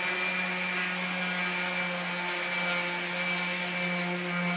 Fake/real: real